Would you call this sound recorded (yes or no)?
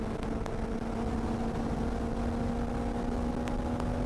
yes